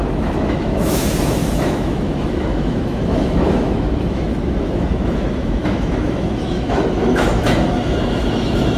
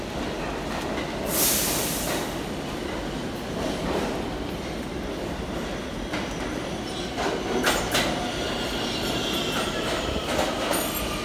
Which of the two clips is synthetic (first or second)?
first